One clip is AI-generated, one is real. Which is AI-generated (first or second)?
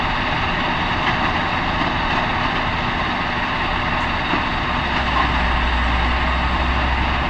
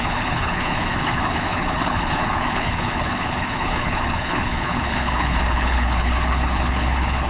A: second